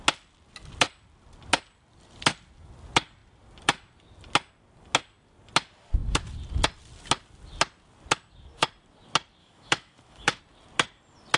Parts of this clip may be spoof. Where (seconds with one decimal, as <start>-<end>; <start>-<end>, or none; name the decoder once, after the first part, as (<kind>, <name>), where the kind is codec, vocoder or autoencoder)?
9.4-10.4 (autoencoder, DAC-VAE)